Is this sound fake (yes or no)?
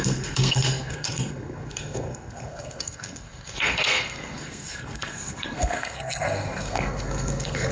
yes